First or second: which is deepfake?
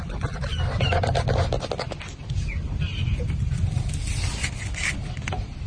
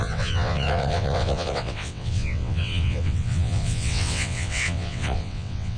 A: second